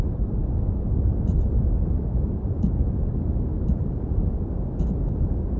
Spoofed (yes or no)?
no